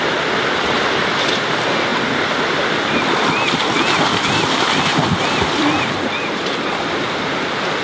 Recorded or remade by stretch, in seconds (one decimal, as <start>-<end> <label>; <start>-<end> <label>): 0.0-1.9 remade; 1.9-5.8 recorded; 5.8-7.8 remade